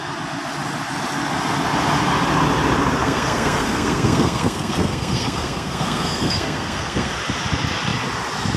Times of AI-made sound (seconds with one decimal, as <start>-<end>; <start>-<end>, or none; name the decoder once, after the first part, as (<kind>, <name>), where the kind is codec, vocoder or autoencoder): 3.0-7.1 (codec, SNAC)

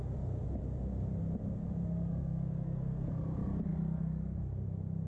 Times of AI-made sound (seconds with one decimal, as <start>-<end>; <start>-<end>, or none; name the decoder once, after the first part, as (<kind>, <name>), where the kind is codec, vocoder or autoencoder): 2.1-3.1 (codec, SNAC)

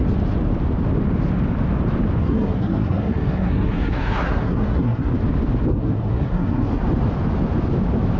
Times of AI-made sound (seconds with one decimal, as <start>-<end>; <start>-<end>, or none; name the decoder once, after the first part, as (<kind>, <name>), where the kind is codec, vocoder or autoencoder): 2.2-5.1 (codec, SNAC); 5.7-6.8

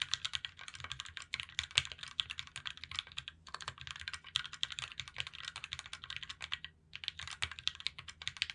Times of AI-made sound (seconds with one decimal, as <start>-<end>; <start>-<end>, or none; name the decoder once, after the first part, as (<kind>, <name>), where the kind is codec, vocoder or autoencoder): none